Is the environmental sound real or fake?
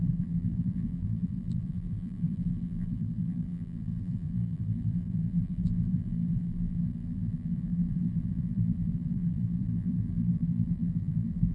fake